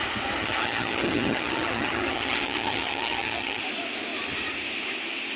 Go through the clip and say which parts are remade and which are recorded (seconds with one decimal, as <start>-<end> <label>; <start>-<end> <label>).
0.0-0.4 recorded; 0.4-3.6 remade; 3.6-5.4 recorded